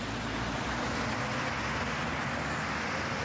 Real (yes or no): yes